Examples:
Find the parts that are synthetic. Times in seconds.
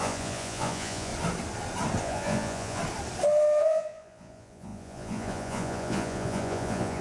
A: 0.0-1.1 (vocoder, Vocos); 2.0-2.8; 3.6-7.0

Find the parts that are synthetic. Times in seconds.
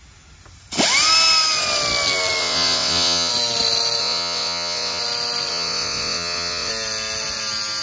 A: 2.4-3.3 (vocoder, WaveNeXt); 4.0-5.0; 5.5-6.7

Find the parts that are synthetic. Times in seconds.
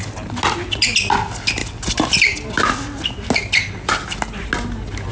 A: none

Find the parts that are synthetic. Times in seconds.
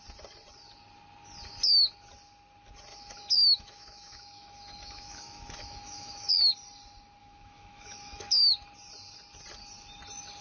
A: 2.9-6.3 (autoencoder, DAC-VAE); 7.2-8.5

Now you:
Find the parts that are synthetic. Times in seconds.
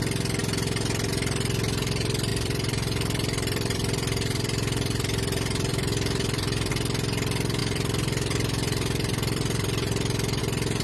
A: 2.3-6.7 (vocoder, BigVGAN v2); 7.6-10.4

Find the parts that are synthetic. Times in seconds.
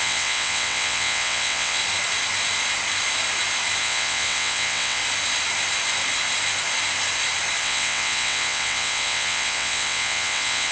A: 0.0-1.8 (vocoder, WaveNeXt); 3.8-5.0; 7.6-10.7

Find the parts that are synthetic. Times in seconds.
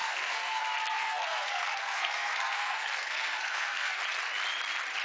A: 0.0-0.6 (codec, SNAC); 1.0-4.0